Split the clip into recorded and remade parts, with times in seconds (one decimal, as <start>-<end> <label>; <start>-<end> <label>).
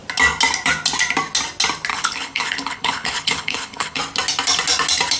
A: 0.0-1.9 recorded; 1.9-4.0 remade; 4.0-5.2 recorded